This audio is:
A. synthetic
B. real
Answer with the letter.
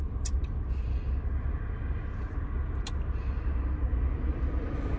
B